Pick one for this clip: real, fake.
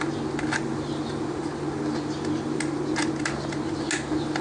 real